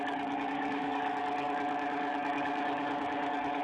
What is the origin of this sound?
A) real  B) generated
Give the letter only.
B